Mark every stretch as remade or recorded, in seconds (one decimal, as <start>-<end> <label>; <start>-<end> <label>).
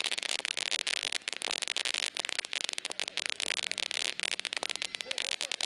0.0-5.7 recorded